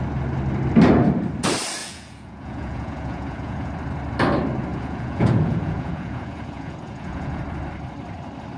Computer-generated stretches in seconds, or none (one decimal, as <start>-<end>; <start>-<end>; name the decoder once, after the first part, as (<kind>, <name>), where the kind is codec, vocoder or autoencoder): 1.8-3.7 (vocoder, Vocos); 4.7-7.4